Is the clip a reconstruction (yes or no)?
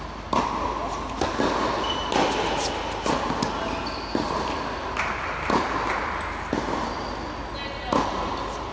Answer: no